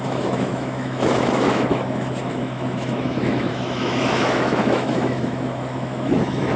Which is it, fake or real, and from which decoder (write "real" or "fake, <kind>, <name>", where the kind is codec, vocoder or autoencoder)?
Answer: fake, autoencoder, DAC-VAE